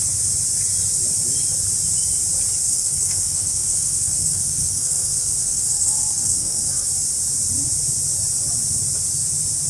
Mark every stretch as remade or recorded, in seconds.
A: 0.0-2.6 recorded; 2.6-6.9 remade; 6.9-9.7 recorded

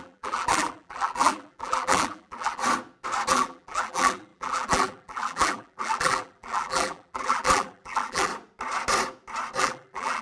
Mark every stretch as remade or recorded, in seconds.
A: 0.0-2.6 remade; 2.6-3.3 recorded; 3.3-8.3 remade; 8.3-9.6 recorded; 9.6-10.2 remade

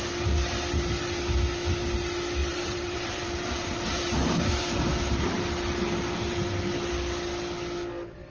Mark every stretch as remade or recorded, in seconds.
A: 0.0-2.4 recorded; 2.4-5.4 remade; 5.4-8.3 recorded

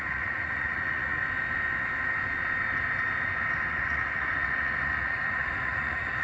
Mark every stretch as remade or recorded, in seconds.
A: 0.0-1.2 remade; 1.2-3.7 recorded; 3.7-6.2 remade

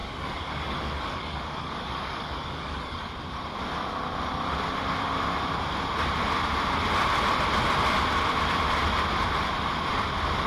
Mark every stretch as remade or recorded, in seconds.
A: 0.0-3.1 remade; 3.1-10.5 recorded

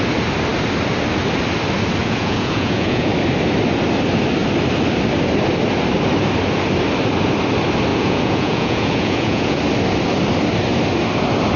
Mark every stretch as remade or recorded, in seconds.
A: 0.0-2.0 recorded; 2.0-3.1 remade; 3.1-7.9 recorded; 7.9-9.6 remade; 9.6-11.6 recorded

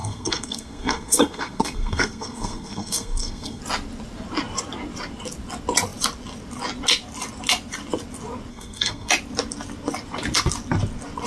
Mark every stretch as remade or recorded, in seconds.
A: 0.0-3.6 remade; 3.6-8.5 recorded; 8.5-9.1 remade; 9.1-11.3 recorded

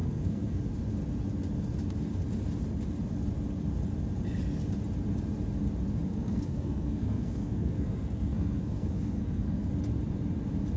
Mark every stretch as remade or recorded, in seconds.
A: 0.0-0.6 remade; 0.6-6.1 recorded; 6.1-9.7 remade; 9.7-10.8 recorded